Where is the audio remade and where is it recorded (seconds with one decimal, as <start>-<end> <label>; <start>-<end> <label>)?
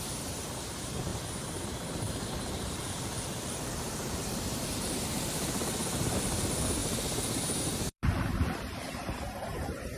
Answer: 0.0-10.0 remade